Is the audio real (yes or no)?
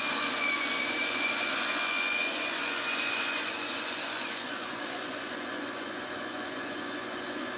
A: no